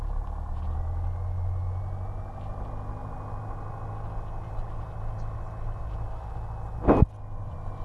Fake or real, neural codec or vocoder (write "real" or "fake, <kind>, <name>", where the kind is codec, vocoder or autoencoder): real